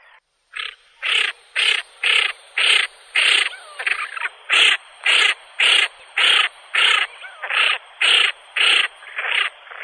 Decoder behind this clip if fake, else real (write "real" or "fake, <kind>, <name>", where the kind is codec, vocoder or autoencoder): real